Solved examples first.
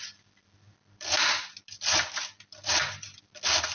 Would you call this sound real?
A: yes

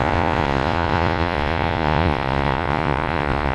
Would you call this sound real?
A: no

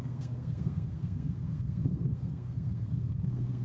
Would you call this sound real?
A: no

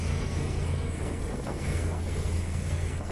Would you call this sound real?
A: no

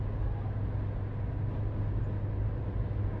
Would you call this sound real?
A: yes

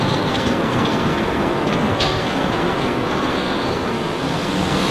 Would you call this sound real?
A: no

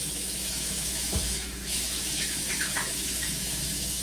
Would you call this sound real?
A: no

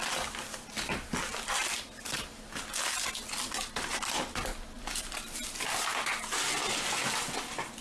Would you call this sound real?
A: yes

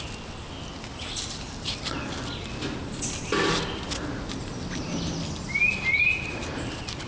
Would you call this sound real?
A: yes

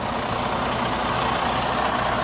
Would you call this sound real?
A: yes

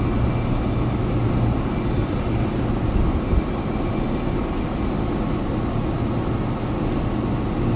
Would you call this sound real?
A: yes